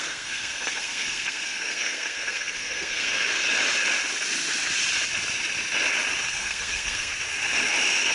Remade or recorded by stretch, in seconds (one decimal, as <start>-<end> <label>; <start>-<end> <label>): 0.0-3.3 remade; 3.3-6.3 recorded; 6.3-7.1 remade; 7.1-8.1 recorded